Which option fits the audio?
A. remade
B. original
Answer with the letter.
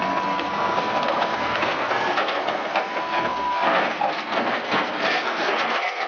A